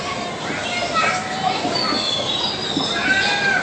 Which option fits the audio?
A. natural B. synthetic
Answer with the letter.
A